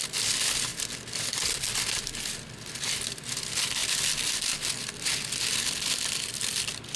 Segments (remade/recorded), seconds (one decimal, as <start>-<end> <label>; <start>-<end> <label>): 0.0-7.0 recorded